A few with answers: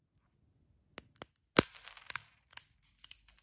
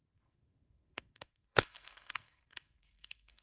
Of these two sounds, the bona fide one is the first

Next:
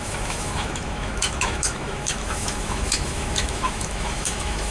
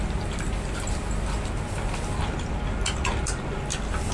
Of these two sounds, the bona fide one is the second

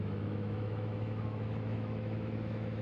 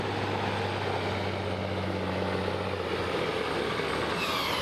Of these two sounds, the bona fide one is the second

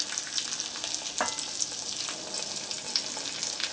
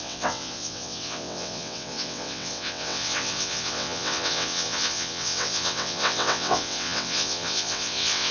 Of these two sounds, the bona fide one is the first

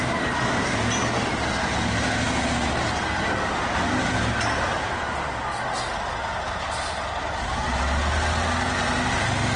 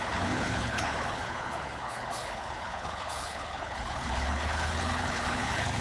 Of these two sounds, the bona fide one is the first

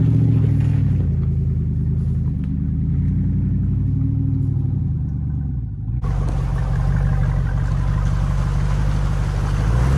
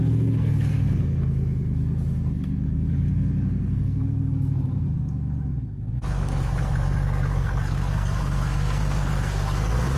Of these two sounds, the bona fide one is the first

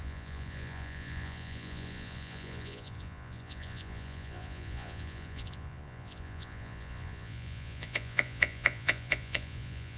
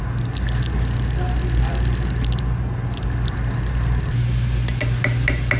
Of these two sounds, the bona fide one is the second